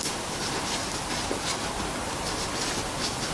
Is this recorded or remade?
recorded